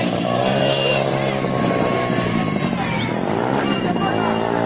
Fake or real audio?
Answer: real